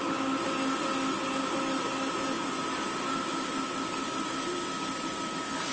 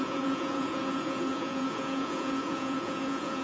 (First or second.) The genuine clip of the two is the first